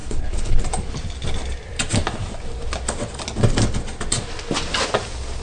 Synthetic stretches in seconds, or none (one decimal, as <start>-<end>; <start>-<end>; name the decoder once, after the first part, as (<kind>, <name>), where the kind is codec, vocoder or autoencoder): 0.0-0.6 (codec, HILCodec)